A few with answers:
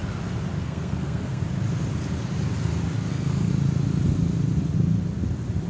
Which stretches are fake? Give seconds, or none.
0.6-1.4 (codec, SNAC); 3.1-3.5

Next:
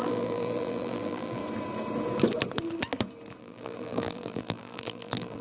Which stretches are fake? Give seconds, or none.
0.0-1.4 (vocoder, BigVGAN v2); 3.4-5.4

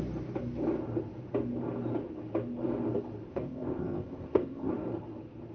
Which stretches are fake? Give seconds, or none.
3.3-4.7 (codec, ZipCodec)